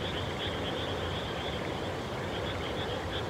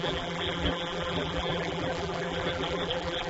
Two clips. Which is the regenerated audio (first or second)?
second